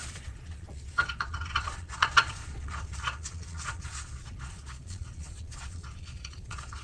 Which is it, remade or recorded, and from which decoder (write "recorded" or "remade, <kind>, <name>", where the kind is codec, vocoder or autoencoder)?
remade, vocoder, Vocos